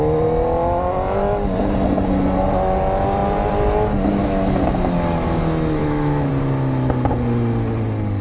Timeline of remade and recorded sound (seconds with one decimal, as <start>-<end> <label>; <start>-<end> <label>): 0.0-5.8 recorded; 5.8-6.3 remade; 6.3-8.2 recorded